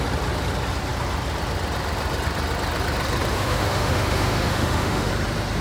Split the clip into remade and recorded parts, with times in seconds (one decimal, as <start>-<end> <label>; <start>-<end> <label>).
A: 0.0-3.3 recorded; 3.3-5.1 remade; 5.1-5.6 recorded